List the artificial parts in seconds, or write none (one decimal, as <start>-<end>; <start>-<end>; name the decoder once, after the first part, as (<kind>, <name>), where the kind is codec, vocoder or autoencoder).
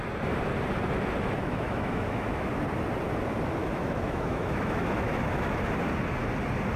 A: 1.4-2.5 (autoencoder, DAC-VAE); 3.6-5.6